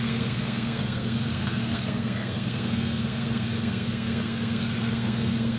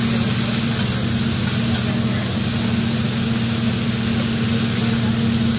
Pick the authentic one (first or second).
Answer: second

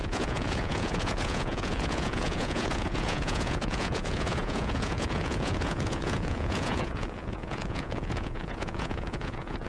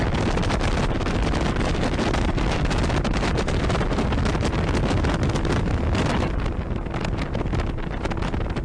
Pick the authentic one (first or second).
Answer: second